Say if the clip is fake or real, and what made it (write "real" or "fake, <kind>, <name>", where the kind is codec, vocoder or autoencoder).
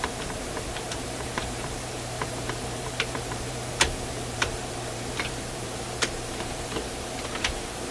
fake, vocoder, BigVGAN v2